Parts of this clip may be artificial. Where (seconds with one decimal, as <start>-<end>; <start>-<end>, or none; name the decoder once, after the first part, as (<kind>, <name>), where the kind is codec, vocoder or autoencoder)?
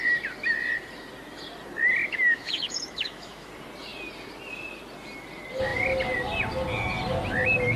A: 2.0-3.5 (autoencoder, DAC-VAE)